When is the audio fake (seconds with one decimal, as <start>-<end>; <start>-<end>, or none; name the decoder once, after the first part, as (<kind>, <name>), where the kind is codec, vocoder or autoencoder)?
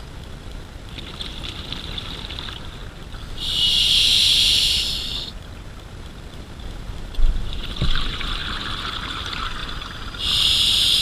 0.0-2.8 (vocoder, BigVGAN v2); 5.9-9.6; 10.6-11.0